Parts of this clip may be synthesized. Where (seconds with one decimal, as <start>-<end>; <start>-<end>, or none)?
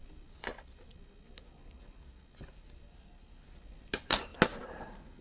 none